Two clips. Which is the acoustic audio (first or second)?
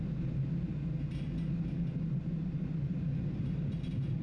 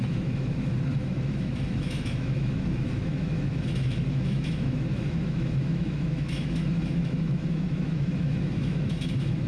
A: first